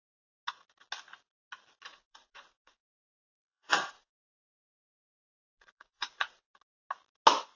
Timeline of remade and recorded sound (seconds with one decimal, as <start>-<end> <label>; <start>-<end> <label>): 0.0-1.9 recorded; 1.9-6.5 remade; 6.5-7.6 recorded